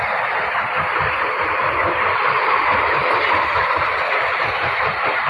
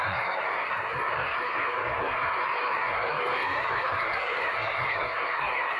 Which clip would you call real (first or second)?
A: first